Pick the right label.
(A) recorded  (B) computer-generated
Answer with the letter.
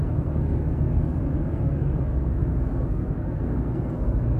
B